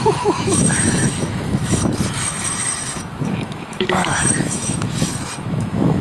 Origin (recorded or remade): remade